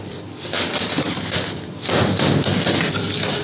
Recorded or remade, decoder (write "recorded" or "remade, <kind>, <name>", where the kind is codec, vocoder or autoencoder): recorded